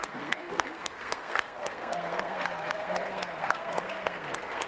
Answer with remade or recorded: remade